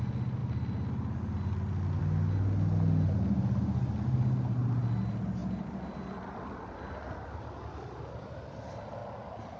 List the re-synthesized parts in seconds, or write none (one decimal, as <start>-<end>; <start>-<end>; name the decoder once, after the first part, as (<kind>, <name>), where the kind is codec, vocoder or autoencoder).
none